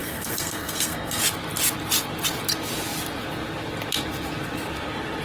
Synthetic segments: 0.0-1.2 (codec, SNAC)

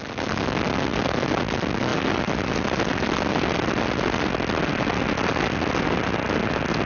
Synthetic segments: 0.9-1.4 (vocoder, BigVGAN v2); 1.9-4.3